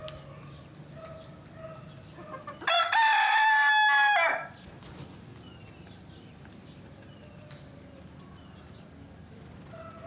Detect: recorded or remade recorded